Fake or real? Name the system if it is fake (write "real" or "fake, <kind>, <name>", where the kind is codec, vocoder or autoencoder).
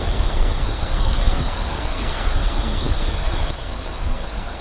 fake, codec, SNAC